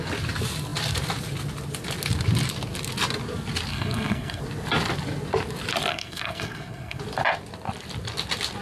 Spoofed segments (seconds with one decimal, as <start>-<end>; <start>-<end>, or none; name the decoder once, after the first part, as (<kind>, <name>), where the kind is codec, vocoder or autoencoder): 3.7-4.4 (codec, SNAC); 5.9-7.0